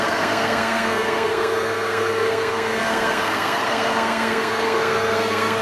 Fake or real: fake